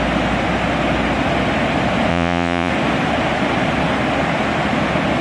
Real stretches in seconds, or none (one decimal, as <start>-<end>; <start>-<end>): 0.0-2.1; 2.7-5.2